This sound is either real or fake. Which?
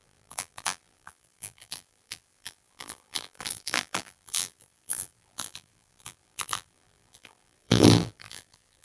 fake